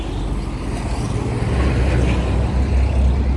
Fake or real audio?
real